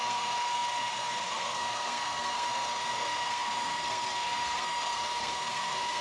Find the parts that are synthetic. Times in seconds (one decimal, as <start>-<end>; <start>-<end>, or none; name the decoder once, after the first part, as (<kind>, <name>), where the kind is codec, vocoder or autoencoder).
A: 0.0-6.0 (codec, SNAC)